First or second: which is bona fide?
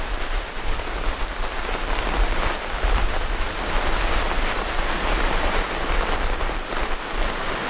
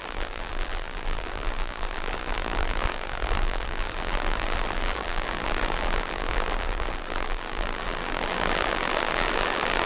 first